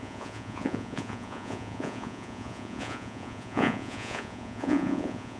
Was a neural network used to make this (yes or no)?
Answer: yes